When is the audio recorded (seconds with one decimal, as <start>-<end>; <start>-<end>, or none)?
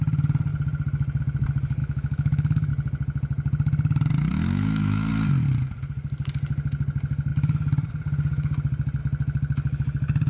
0.0-1.8; 2.7-4.3; 5.1-10.3